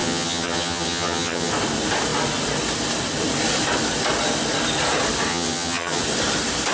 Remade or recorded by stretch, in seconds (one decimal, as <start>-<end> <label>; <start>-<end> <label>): 0.0-1.5 remade; 1.5-5.3 recorded; 5.3-6.0 remade; 6.0-6.7 recorded